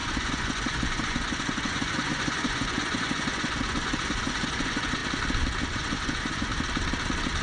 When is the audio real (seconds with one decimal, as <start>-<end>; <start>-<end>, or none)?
5.0-5.7; 6.5-7.4